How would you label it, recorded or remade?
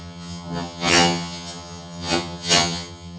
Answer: remade